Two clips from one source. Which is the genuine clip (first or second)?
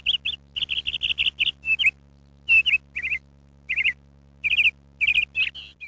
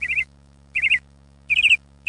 first